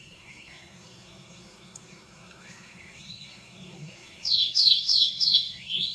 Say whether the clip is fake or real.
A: fake